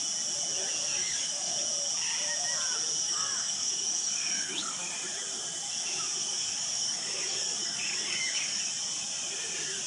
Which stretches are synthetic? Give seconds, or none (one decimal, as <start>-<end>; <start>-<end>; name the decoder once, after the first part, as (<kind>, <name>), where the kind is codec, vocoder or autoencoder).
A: 0.9-1.5 (codec, DAC); 3.0-4.9; 6.2-8.7